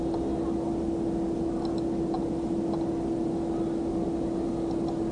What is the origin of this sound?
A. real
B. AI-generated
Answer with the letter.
A